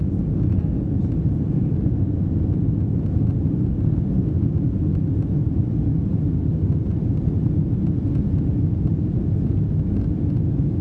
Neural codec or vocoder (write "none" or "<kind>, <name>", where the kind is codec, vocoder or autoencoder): none